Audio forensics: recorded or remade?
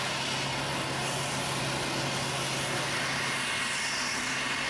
recorded